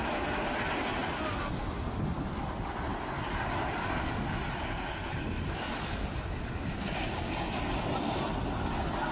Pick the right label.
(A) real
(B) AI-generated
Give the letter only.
A